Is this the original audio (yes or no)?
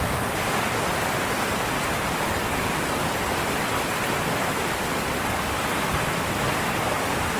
yes